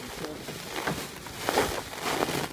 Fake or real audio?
real